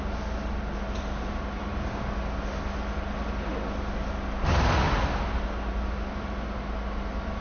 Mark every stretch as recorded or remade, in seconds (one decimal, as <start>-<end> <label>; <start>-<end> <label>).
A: 0.0-7.4 recorded